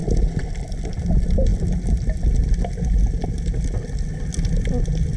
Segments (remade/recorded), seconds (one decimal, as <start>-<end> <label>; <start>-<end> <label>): 0.0-5.2 recorded